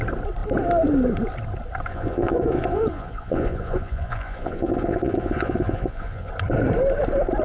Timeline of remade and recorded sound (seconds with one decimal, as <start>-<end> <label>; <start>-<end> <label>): 0.0-1.9 recorded; 1.9-6.3 remade; 6.3-7.4 recorded